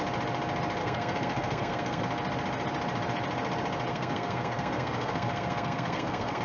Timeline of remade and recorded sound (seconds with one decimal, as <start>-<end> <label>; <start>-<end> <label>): 0.0-0.8 recorded; 0.8-2.0 remade; 2.0-3.9 recorded; 3.9-6.4 remade